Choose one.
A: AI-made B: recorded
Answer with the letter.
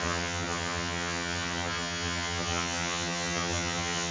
A